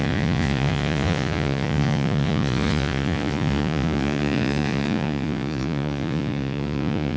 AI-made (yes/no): yes